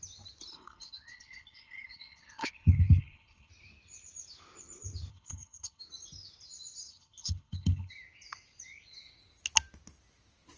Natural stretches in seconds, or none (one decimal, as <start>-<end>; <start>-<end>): 0.0-0.5; 3.5-5.1; 5.8-6.9; 7.9-10.6

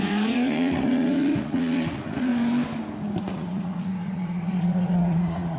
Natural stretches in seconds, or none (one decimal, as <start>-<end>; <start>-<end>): 2.3-3.2